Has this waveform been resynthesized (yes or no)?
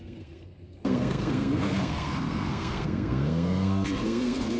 yes